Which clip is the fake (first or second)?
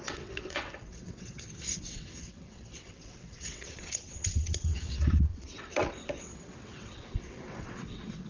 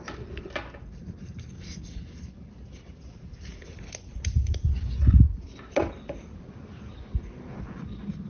first